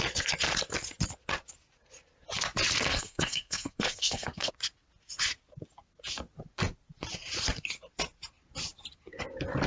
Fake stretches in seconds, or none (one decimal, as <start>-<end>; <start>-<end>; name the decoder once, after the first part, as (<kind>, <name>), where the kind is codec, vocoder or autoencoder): 2.9-4.5 (codec, SNAC)